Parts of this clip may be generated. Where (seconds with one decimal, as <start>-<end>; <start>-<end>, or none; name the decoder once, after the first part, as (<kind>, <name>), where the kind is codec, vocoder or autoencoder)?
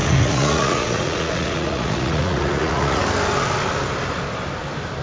0.0-3.0 (vocoder, Vocos)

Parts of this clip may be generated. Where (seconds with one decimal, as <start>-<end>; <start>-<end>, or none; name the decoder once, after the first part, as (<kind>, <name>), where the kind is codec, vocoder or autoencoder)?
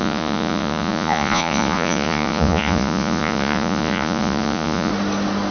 0.0-4.9 (vocoder, Vocos)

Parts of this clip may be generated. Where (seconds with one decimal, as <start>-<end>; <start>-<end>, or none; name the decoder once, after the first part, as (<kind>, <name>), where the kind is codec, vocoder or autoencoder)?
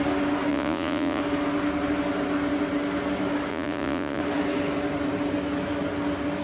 0.5-1.2 (vocoder, Vocos); 3.5-4.2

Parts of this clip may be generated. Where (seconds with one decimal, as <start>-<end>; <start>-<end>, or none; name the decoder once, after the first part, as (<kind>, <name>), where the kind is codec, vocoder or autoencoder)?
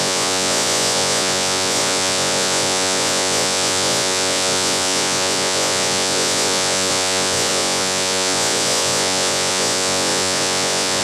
0.0-11.0 (vocoder, Vocos)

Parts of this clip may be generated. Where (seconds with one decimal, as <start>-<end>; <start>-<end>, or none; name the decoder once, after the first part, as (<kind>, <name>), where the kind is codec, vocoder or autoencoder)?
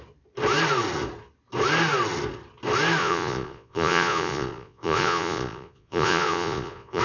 3.0-7.0 (vocoder, Vocos)